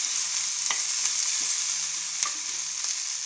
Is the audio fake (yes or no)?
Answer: no